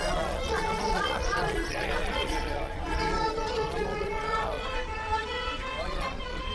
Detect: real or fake fake